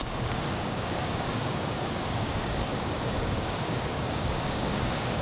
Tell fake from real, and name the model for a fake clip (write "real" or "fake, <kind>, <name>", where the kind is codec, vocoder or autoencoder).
fake, codec, DAC